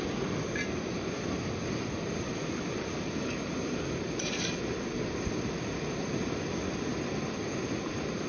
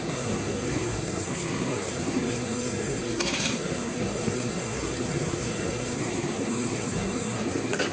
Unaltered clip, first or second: first